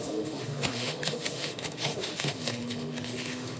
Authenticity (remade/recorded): remade